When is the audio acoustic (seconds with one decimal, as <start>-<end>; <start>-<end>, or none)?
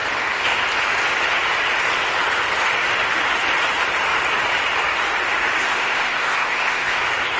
0.0-5.6; 7.0-7.4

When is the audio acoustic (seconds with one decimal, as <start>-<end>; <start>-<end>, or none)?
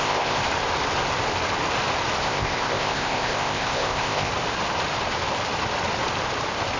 0.4-2.2; 4.3-6.8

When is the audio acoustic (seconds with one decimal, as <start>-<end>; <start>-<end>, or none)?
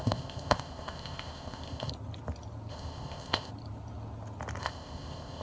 1.9-2.7; 3.5-4.6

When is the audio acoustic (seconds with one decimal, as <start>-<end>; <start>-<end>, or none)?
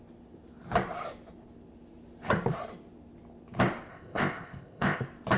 0.0-3.9; 5.0-5.4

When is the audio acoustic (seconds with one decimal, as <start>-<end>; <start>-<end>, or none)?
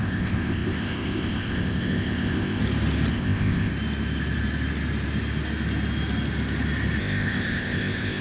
2.6-3.1; 3.7-7.0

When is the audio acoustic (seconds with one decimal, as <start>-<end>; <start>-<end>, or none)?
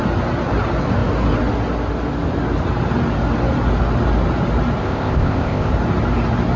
0.0-4.8; 5.7-6.6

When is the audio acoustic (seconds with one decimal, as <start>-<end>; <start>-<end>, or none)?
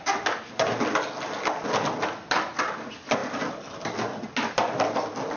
0.0-5.4